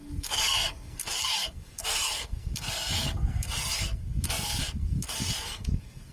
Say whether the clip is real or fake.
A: fake